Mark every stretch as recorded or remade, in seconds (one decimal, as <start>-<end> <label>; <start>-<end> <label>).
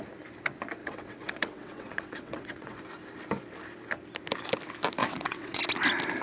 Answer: 0.0-0.8 recorded; 0.8-2.8 remade; 2.8-5.0 recorded; 5.0-5.6 remade; 5.6-6.2 recorded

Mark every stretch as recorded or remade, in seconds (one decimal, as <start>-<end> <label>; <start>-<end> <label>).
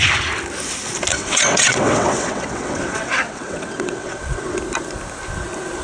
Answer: 0.0-1.1 recorded; 1.1-4.6 remade; 4.6-5.8 recorded